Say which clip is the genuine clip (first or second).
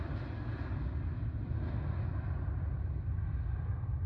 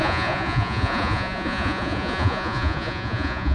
first